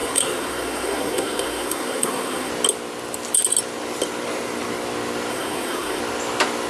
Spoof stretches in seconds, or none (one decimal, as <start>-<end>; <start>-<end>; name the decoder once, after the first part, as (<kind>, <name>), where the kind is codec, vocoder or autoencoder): 0.0-2.5 (codec, SNAC); 5.3-6.0